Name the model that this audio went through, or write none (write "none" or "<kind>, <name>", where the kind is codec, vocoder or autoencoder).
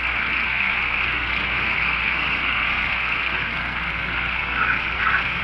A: codec, SNAC